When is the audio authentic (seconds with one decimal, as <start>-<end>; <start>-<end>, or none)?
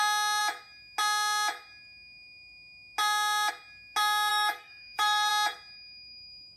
0.0-4.3; 5.3-6.6